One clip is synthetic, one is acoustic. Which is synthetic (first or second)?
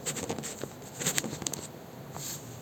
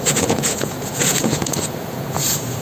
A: second